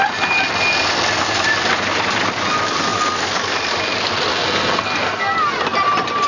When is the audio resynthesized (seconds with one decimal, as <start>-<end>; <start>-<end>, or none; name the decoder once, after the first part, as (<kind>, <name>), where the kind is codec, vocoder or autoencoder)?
4.3-5.2 (codec, SNAC)